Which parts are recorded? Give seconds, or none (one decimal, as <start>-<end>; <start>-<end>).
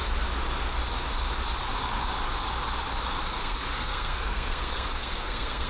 0.0-3.4